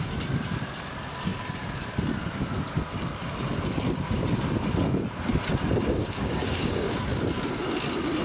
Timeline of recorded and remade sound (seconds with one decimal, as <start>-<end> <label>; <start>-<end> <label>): 0.0-6.0 recorded; 6.0-7.0 remade; 7.0-8.2 recorded